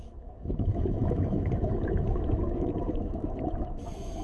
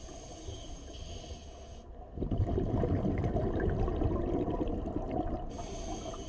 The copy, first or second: first